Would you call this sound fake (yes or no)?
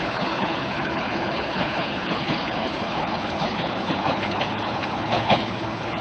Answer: yes